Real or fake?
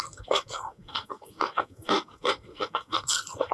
fake